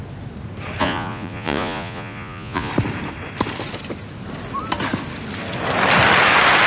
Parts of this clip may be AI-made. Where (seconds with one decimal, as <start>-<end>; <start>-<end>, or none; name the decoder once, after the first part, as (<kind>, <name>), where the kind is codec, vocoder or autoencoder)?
0.8-2.7 (vocoder, Vocos)